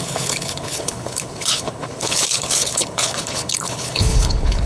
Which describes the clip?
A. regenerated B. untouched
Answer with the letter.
A